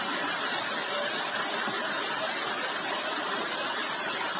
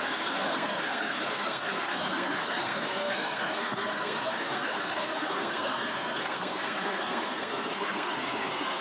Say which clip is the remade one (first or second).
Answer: second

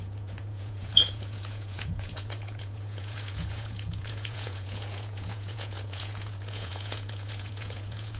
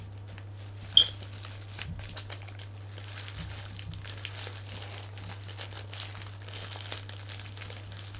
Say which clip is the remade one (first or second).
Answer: first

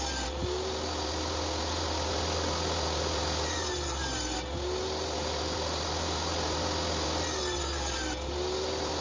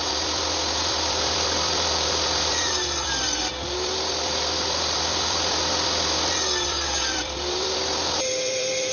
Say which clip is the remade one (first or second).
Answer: second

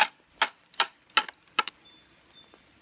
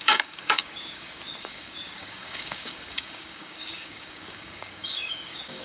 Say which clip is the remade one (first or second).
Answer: second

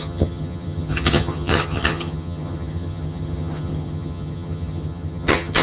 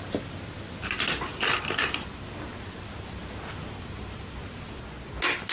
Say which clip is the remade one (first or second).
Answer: first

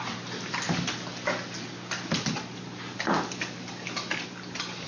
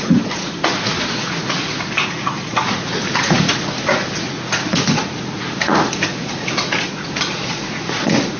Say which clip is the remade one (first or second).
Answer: second